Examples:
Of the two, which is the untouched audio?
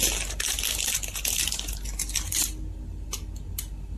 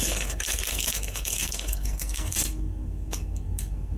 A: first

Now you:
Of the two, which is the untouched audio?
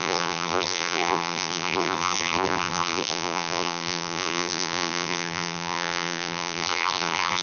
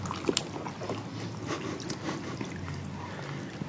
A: second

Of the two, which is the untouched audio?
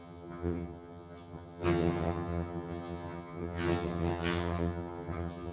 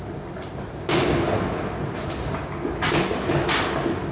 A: second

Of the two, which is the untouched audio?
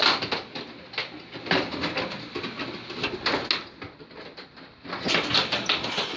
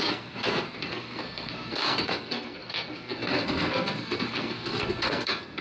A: first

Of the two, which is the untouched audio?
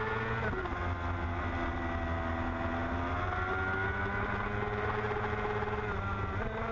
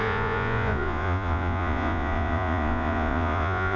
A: first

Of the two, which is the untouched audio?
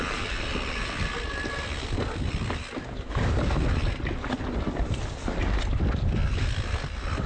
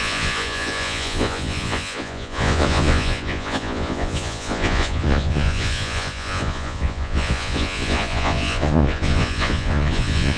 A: first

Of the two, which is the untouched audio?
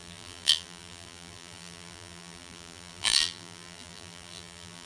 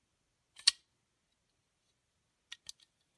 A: second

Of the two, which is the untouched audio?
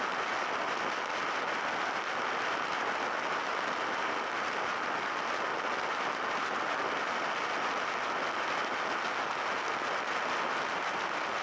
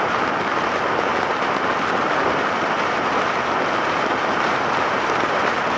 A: first